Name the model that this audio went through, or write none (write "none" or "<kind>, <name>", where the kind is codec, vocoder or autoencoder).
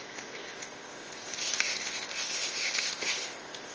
codec, ZipCodec